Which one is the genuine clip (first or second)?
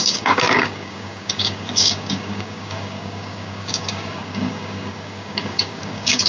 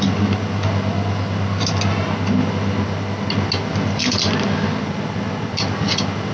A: second